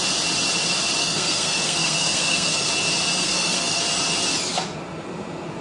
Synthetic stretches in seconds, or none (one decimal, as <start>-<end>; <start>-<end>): 1.0-2.7; 3.2-3.8

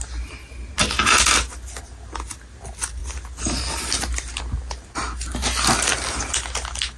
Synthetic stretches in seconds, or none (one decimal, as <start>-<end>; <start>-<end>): none

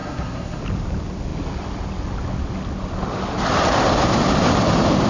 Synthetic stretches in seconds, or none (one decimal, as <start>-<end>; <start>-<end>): 0.0-0.6

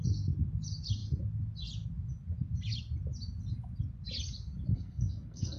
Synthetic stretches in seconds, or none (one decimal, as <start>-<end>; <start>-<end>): 4.7-5.6

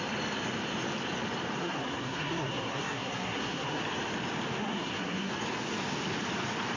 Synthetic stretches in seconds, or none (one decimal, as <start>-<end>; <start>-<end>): 1.6-3.8; 4.6-5.3

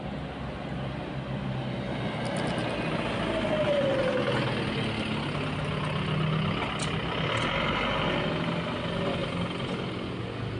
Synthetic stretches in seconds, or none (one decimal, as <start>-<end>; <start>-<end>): none

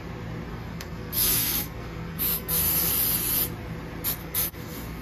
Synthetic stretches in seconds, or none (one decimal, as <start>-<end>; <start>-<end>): 0.5-2.9; 4.2-5.0

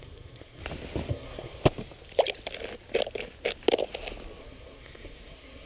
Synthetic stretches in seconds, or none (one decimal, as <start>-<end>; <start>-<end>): 0.0-0.6; 1.1-1.6; 4.4-5.7